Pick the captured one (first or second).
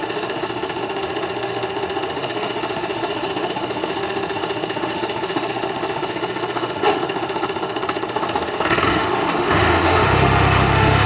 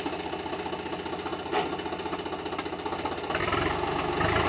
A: second